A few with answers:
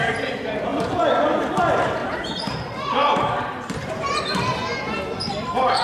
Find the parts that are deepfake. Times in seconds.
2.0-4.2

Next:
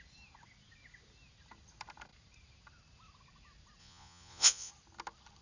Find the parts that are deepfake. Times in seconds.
3.8-4.7

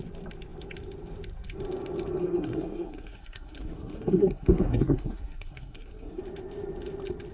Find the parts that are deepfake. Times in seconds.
2.2-6.2